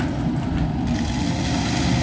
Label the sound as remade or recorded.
recorded